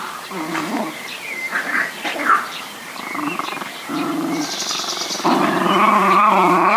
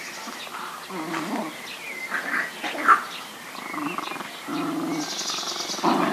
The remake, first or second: first